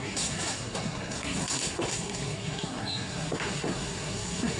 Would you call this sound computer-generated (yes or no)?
yes